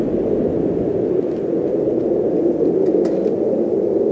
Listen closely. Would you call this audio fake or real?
real